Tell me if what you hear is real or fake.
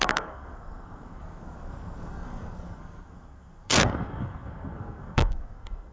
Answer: fake